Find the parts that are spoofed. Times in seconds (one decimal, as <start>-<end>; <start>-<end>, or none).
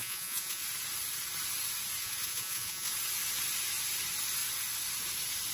0.0-0.6; 2.0-2.9